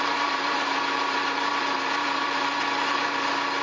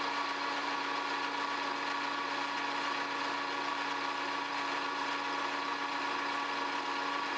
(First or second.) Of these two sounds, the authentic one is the second